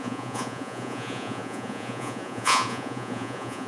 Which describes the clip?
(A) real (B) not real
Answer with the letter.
B